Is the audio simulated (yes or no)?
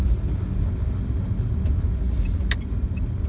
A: no